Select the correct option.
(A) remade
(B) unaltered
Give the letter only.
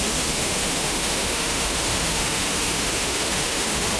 A